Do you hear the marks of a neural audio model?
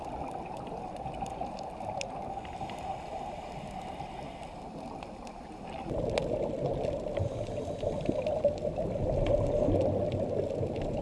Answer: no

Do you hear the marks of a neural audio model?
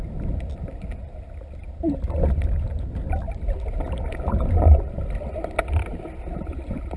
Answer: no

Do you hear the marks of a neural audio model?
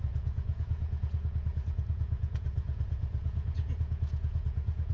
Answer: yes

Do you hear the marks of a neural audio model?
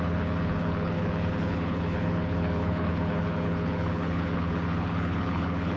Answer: yes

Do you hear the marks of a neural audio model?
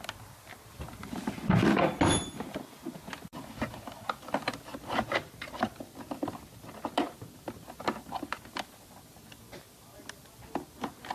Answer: no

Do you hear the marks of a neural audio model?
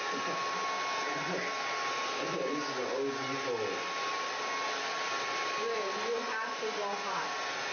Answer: no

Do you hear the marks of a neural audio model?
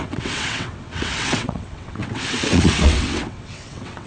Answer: yes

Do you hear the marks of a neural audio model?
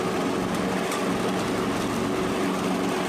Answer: no